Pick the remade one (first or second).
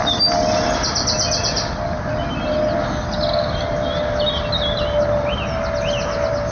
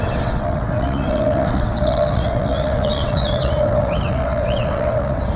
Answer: second